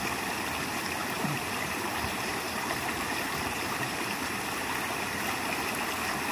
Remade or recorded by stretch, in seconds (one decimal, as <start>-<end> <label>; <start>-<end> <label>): 0.0-1.0 recorded; 1.0-4.4 remade; 4.4-6.3 recorded